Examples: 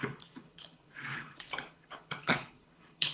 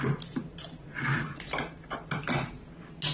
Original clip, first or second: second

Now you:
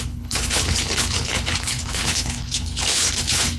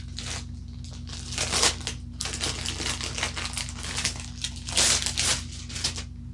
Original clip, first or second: second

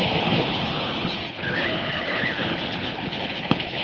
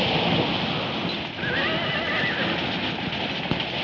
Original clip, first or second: second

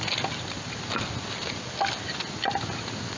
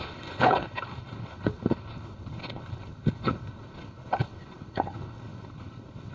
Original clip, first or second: first